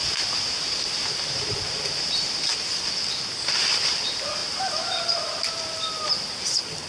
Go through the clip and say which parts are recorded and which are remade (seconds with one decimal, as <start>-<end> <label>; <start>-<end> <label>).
0.0-0.6 recorded; 0.6-2.5 remade; 2.5-3.5 recorded; 3.5-6.9 remade